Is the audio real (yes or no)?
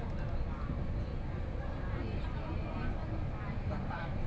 yes